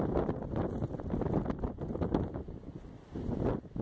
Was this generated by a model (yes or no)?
no